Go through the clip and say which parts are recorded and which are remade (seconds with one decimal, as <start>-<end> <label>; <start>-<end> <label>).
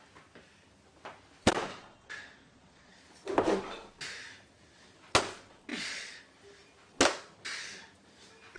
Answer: 0.0-1.8 recorded; 1.8-3.0 remade; 3.0-5.7 recorded; 5.7-6.2 remade; 6.2-8.6 recorded